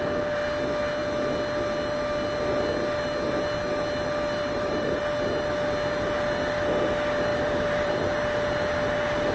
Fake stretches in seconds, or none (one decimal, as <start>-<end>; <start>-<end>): 4.4-5.0; 7.3-7.9